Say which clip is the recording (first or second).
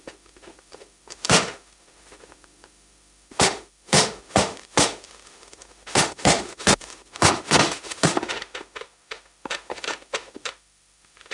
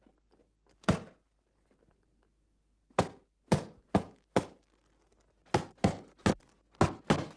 second